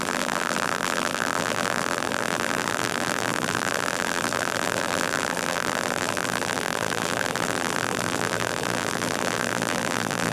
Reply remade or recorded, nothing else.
remade